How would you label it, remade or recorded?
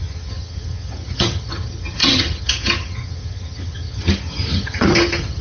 remade